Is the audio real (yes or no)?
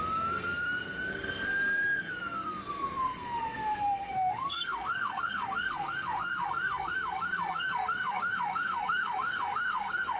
no